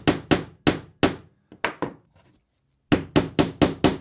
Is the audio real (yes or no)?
yes